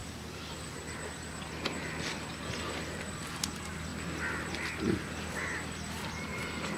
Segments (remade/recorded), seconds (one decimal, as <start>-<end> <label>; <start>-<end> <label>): 0.0-6.8 recorded